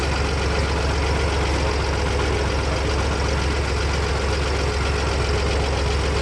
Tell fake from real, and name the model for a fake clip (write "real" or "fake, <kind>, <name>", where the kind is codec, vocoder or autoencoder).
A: real